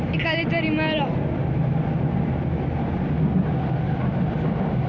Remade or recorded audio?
recorded